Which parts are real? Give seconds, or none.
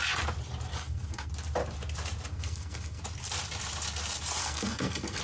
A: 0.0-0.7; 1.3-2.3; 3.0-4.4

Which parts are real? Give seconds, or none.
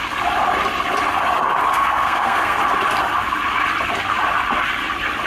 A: 0.0-1.7; 2.6-5.3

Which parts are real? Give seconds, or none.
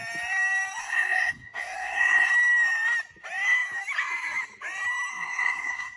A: 0.0-0.8; 2.3-5.1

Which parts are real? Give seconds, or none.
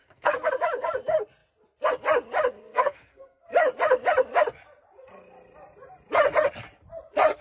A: 0.5-2.6; 3.4-7.4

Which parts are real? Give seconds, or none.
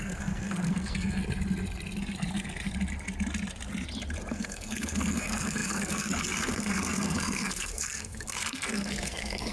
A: 1.2-4.3